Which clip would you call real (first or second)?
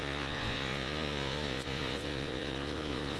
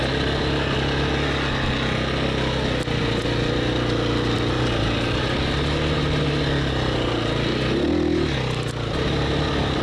second